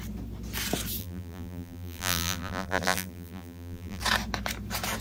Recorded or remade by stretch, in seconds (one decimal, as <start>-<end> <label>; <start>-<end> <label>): 0.0-1.0 recorded; 1.0-4.0 remade; 4.0-5.0 recorded